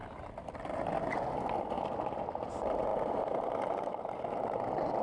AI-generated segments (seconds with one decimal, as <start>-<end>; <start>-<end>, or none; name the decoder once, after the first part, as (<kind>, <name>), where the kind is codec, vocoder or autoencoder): none